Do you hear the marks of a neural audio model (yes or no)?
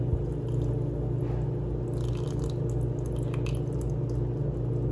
no